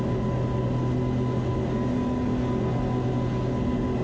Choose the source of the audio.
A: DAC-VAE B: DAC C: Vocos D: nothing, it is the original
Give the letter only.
D